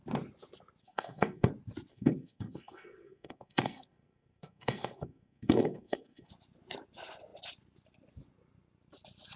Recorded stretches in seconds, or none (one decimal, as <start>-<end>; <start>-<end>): 0.0-0.8; 1.5-1.9; 6.3-9.4